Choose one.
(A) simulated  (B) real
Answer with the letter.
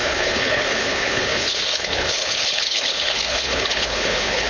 A